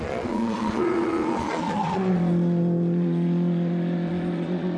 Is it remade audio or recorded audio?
remade